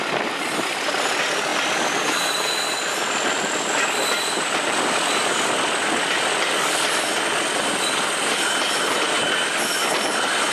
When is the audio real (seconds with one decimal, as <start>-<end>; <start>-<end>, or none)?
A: 0.0-10.5